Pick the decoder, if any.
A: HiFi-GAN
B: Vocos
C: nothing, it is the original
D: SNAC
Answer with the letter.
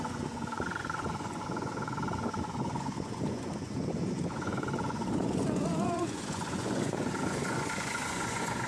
B